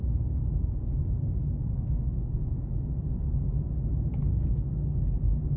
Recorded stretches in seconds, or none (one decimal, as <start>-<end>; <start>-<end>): 0.0-1.7; 2.7-5.6